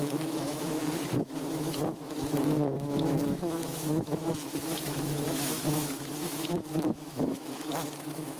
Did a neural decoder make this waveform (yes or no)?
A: yes